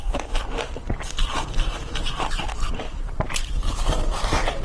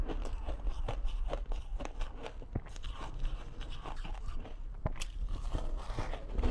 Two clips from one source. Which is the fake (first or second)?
first